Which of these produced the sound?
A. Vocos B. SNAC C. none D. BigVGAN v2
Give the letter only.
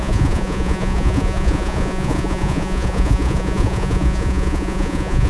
A